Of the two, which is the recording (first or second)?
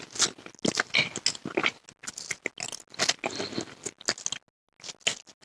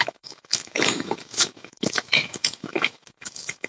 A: first